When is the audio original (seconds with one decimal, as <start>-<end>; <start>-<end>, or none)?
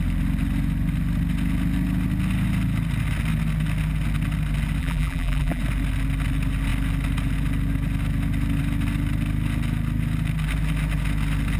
0.0-4.8; 5.6-11.6